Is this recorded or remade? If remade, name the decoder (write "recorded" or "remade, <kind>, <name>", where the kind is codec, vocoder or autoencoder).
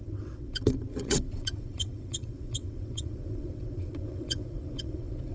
remade, vocoder, WaveNeXt